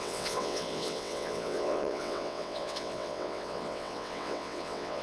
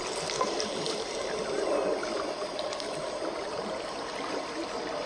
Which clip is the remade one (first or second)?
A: first